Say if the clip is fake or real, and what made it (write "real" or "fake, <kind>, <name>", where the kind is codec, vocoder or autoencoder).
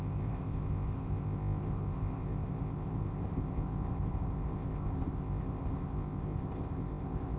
fake, codec, ZipCodec